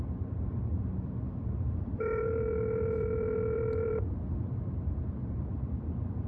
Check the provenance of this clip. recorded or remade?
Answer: remade